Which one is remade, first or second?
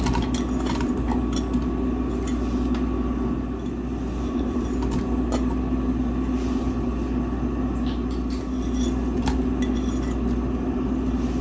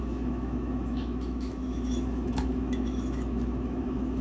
second